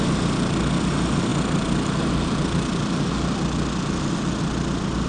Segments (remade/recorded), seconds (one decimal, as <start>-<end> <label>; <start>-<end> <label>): 0.0-5.1 recorded